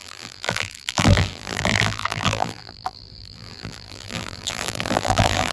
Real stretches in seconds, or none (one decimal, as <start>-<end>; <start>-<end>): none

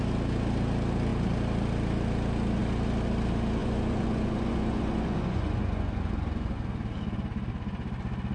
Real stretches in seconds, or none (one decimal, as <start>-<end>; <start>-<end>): 0.0-3.6; 6.6-8.3

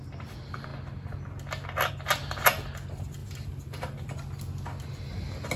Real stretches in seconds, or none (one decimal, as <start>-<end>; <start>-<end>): 0.0-3.2; 4.1-5.6